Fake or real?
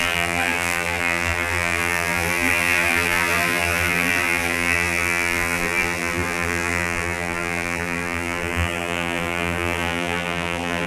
fake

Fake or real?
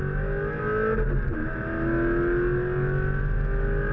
real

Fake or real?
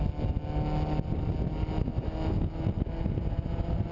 real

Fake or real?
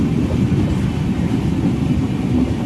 real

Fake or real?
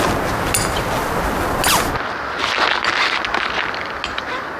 real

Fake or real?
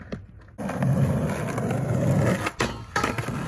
real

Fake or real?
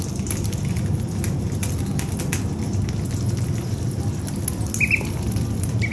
real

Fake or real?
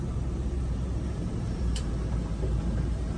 fake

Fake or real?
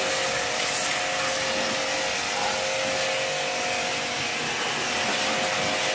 real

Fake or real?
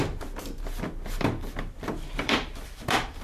fake